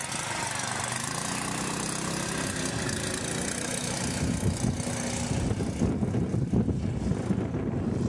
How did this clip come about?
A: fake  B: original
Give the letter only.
B